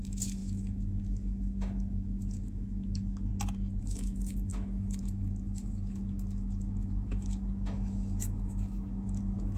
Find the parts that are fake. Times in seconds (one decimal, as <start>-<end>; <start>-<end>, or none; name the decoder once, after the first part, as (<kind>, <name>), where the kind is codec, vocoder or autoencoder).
0.0-3.3 (autoencoder, DAC-VAE); 3.8-9.6